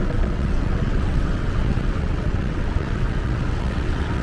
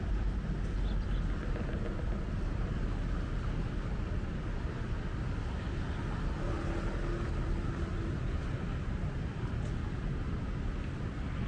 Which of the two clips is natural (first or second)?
second